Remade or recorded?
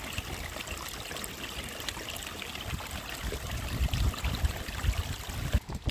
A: recorded